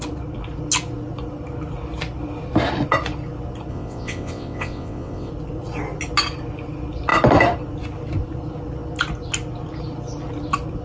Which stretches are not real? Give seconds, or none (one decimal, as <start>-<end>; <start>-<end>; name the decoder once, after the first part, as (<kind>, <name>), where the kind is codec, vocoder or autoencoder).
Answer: 3.7-5.3 (vocoder, WaveNeXt)